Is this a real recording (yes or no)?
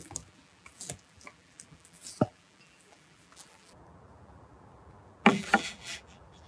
no